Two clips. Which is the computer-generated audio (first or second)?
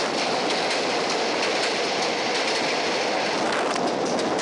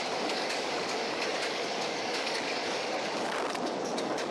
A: second